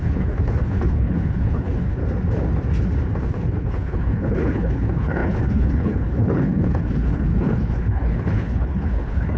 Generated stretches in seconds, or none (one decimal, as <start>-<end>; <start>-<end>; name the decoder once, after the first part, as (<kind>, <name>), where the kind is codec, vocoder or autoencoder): 0.0-2.0 (codec, HILCodec); 3.2-9.4